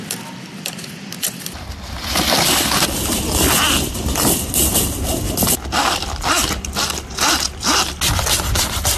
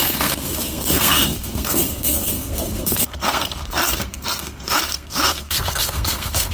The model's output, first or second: second